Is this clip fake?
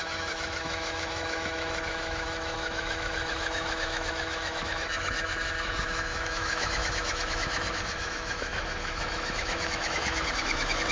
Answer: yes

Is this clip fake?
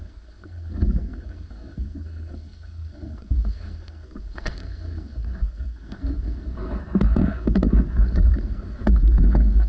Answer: yes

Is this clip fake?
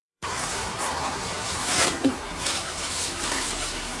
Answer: yes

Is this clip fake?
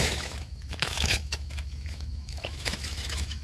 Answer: yes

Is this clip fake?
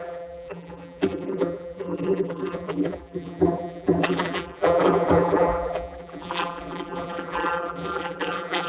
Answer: yes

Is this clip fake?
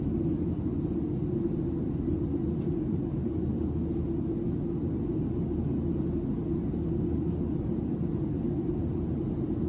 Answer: no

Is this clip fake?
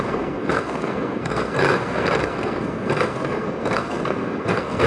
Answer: yes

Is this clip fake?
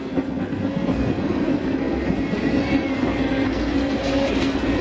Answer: yes